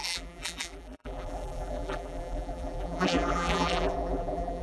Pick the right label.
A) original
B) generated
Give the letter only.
B